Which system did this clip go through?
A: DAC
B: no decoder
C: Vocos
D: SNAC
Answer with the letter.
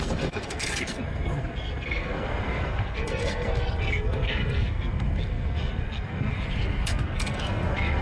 D